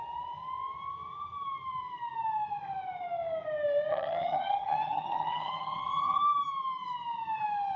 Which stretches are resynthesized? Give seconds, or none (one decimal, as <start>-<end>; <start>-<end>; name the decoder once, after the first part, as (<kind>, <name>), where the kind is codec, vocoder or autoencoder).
3.9-6.2 (vocoder, HiFi-GAN)